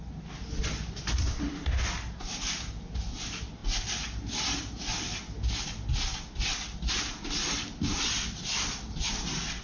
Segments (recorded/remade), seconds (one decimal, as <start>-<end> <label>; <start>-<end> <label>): 0.0-9.6 recorded